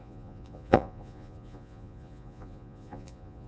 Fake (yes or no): yes